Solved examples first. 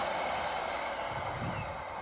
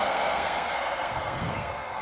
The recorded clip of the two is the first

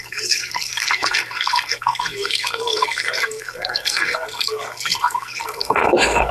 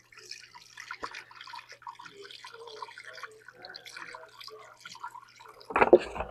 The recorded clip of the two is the second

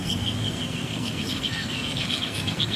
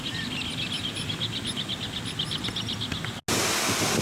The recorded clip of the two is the second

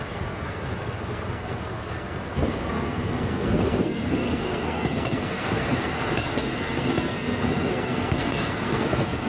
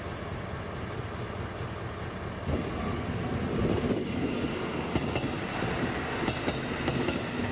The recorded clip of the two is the second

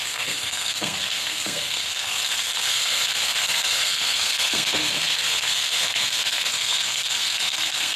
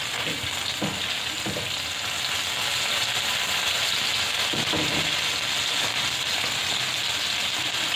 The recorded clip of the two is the second